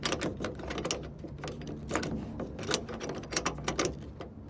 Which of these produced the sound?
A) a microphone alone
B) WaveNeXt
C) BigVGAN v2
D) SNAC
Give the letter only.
A